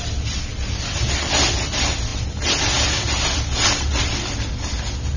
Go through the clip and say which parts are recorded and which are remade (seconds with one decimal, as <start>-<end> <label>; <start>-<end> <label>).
0.0-5.2 recorded